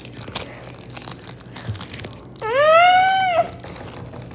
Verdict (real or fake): real